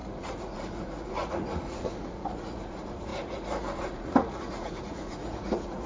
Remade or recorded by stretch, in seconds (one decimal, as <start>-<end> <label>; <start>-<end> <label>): 0.0-5.9 remade